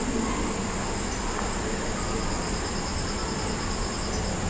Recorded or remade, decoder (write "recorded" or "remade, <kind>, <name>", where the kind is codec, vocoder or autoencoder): recorded